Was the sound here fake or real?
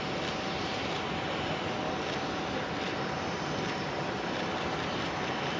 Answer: fake